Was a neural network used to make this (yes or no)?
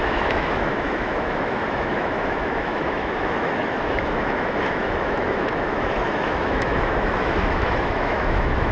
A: yes